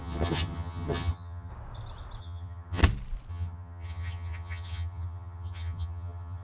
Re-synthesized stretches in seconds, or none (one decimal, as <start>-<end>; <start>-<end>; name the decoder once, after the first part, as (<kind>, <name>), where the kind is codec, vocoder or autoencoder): 0.0-1.5 (vocoder, HiFi-GAN); 2.2-2.8; 3.3-6.4